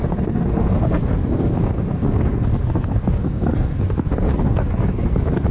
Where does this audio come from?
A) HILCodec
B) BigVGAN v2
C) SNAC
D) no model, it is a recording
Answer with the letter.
C